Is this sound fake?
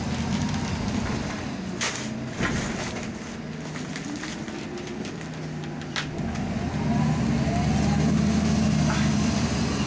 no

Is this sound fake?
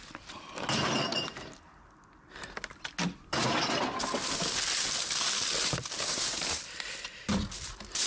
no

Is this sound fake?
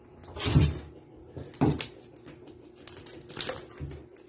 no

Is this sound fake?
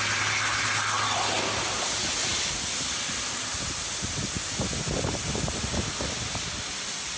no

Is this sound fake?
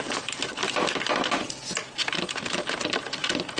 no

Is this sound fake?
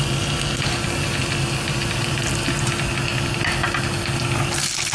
no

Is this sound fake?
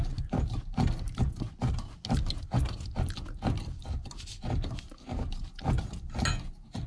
no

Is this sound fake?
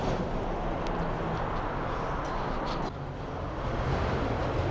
no